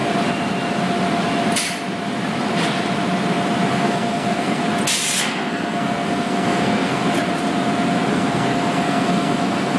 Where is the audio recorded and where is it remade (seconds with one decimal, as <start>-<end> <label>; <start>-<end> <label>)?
0.0-3.7 recorded; 3.7-4.6 remade; 4.6-5.2 recorded; 5.2-7.0 remade; 7.0-8.1 recorded; 8.1-9.8 remade